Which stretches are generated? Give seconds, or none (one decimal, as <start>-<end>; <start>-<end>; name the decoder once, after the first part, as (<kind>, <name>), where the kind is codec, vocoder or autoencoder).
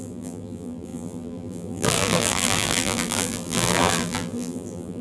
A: 0.0-5.0 (vocoder, BigVGAN v2)